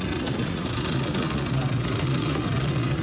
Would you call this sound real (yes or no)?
no